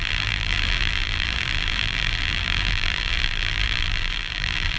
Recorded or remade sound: remade